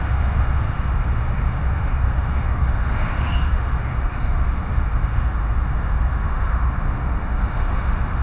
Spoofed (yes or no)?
yes